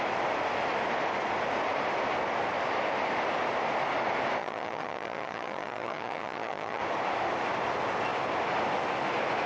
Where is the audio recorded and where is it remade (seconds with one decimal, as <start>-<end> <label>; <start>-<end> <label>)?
0.0-4.4 recorded; 4.4-6.8 remade; 6.8-9.5 recorded